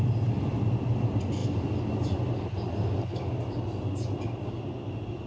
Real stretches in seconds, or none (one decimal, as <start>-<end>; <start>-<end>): 0.0-5.3